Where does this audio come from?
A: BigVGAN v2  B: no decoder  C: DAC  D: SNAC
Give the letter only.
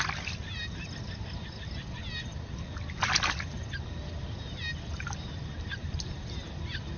B